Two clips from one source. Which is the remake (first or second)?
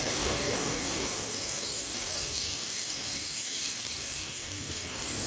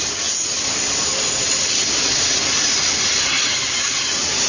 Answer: first